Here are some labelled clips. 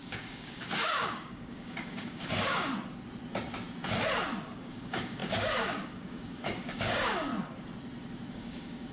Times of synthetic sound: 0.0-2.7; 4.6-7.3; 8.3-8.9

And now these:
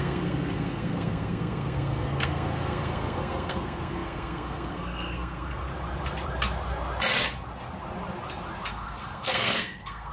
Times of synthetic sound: 0.0-5.7; 8.7-10.1